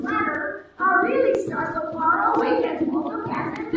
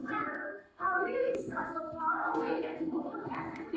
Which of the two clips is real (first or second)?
first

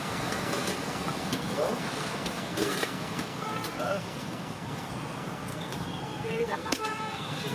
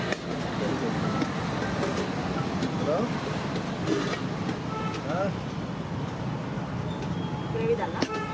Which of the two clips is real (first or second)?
second